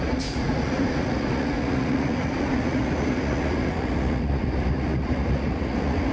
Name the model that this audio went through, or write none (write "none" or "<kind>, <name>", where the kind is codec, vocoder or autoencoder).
vocoder, Vocos